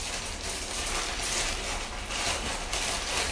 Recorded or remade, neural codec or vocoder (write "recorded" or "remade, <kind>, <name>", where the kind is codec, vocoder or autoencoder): recorded